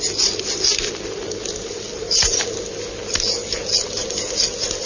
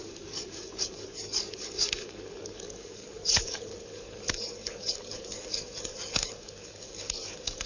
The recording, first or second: first